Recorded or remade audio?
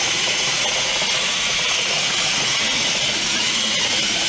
remade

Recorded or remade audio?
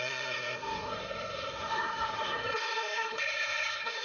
remade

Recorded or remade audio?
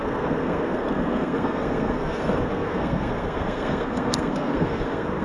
remade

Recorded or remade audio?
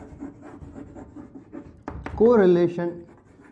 recorded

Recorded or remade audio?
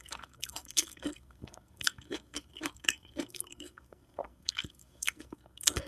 remade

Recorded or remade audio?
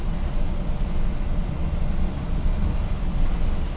recorded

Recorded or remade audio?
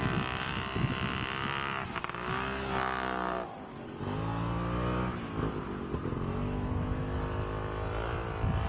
recorded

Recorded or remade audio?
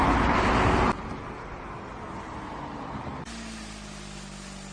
recorded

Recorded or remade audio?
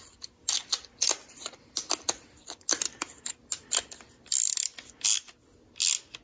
recorded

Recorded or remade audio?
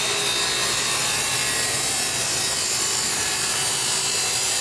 recorded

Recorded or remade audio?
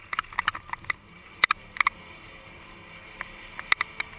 recorded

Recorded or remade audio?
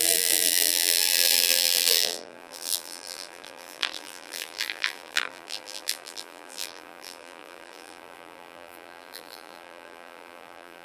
remade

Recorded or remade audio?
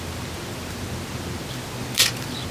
remade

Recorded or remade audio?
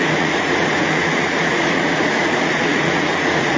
remade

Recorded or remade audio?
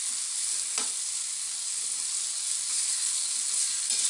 recorded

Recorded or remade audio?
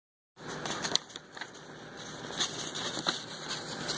recorded